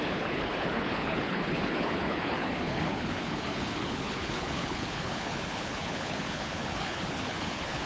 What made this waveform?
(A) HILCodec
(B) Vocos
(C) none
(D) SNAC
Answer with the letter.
A